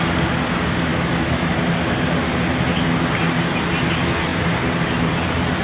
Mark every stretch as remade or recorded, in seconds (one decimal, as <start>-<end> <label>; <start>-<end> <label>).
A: 0.0-0.9 recorded; 0.9-1.5 remade; 1.5-5.6 recorded